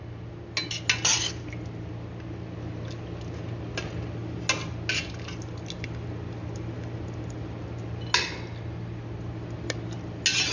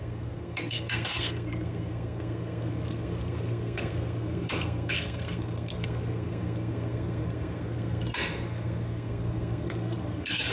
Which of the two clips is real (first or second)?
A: first